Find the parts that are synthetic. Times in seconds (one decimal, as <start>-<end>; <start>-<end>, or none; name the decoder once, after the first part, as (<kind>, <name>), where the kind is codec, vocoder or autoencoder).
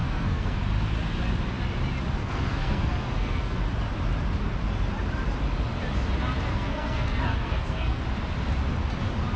0.0-0.6 (codec, SNAC); 2.2-3.6; 6.5-8.0